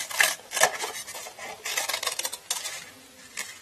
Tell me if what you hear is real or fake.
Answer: fake